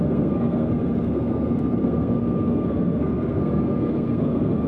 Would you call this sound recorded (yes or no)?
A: no